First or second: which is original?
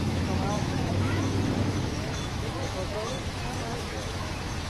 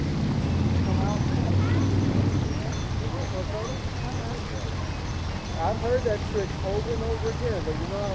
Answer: second